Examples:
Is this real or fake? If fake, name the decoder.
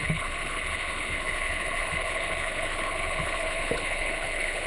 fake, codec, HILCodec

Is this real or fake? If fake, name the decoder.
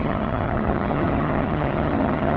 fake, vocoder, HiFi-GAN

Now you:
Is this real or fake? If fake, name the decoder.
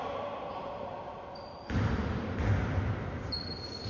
real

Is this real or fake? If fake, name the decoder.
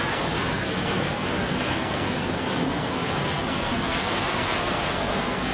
fake, codec, SNAC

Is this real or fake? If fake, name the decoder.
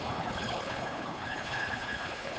fake, codec, HILCodec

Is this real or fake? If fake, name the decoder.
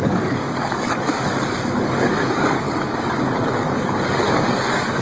fake, codec, DAC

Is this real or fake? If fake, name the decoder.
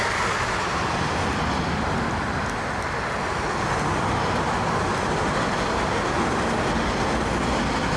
real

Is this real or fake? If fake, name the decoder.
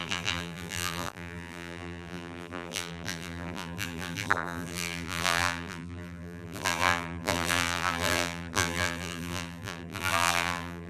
fake, vocoder, BigVGAN v2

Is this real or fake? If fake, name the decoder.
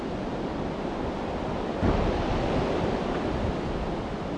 real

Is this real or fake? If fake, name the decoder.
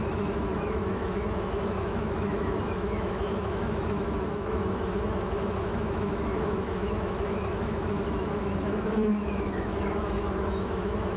fake, autoencoder, DAC-VAE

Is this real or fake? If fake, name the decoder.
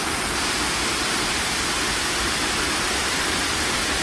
real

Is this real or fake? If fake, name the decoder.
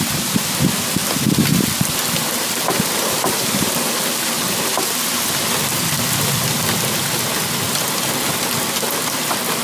real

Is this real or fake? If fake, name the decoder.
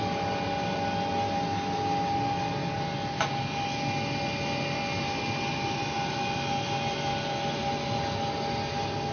real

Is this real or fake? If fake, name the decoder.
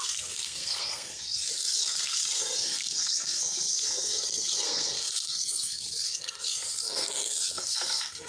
fake, codec, SNAC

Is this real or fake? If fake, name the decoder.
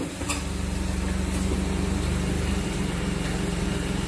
real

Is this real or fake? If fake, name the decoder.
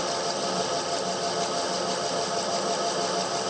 real